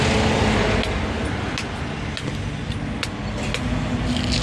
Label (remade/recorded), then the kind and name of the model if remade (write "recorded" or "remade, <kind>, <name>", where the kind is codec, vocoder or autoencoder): recorded